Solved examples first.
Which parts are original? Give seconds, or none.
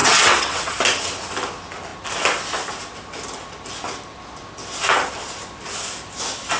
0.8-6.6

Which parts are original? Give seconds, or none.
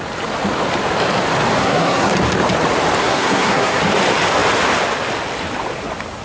0.0-1.6; 2.1-3.0; 3.8-6.2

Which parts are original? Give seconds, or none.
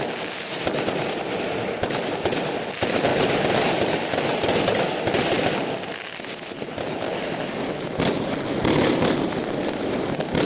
0.0-10.5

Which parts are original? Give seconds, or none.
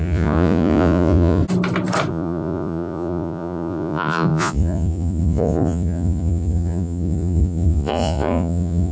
1.4-2.1